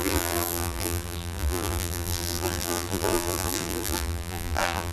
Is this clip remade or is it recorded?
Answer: remade